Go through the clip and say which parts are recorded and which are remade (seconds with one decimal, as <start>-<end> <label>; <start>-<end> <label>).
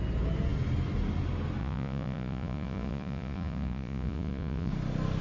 0.0-1.6 recorded; 1.6-4.7 remade; 4.7-5.2 recorded